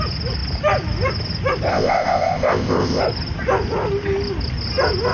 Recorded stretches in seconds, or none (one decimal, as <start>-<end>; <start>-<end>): 0.0-1.7; 3.0-5.1